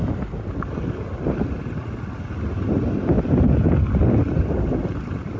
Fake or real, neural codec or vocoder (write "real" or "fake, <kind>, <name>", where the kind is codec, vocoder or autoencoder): real